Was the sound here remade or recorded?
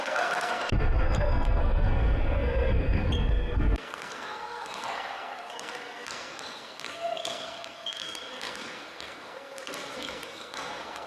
remade